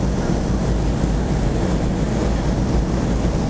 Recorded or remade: recorded